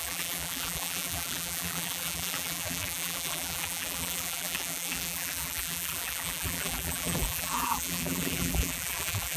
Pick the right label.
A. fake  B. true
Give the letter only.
A